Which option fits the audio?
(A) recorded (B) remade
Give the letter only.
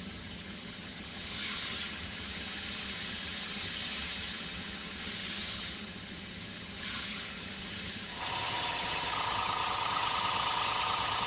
B